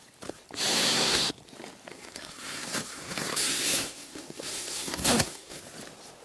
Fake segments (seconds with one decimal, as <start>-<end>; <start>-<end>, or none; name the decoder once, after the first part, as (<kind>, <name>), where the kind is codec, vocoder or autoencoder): 0.7-1.3 (codec, SNAC); 1.9-5.6